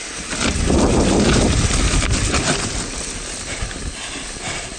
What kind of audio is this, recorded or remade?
recorded